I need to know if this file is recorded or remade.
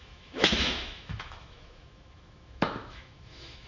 remade